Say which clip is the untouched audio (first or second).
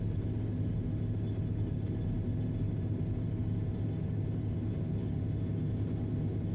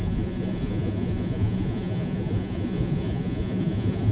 first